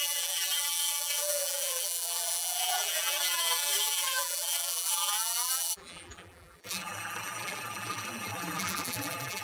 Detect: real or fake fake